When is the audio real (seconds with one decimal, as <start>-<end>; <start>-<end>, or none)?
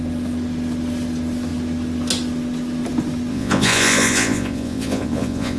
0.0-3.3